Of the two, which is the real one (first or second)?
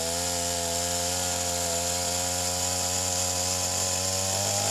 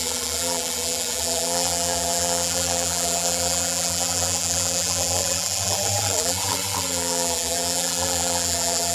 first